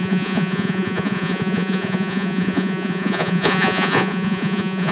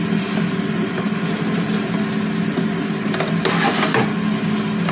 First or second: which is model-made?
first